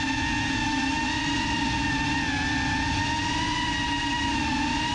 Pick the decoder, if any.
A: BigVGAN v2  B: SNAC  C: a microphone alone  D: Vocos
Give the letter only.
C